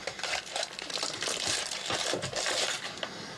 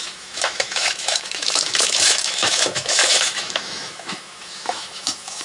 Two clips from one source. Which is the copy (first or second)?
second